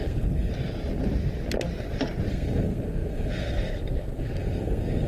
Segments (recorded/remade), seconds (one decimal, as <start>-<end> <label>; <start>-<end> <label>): 0.0-0.5 remade; 0.5-2.3 recorded; 2.3-5.1 remade